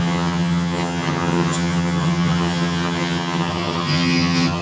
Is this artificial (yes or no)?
yes